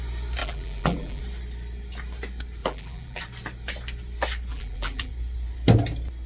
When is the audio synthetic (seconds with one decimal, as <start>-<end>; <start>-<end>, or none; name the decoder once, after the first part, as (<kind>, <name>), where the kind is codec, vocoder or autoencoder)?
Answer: 0.4-1.2 (vocoder, BigVGAN v2); 2.6-3.2; 4.5-5.1